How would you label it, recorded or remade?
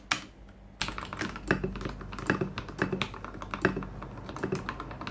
recorded